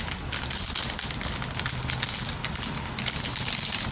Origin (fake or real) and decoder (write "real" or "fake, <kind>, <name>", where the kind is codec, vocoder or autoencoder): real